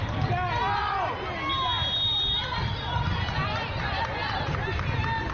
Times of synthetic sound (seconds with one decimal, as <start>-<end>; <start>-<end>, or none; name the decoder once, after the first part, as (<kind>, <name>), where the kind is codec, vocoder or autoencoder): none